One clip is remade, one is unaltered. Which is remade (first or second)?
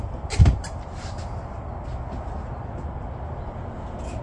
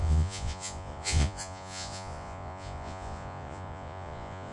second